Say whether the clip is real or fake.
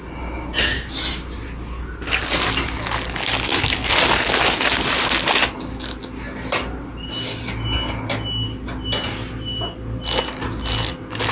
real